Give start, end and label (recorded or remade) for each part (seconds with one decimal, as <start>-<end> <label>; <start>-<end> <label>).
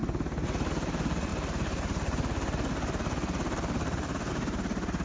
0.0-1.3 recorded; 1.3-4.3 remade; 4.3-5.0 recorded